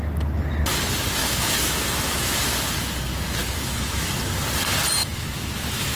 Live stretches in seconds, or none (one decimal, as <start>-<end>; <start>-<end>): 0.0-1.2; 2.4-3.4; 4.1-5.0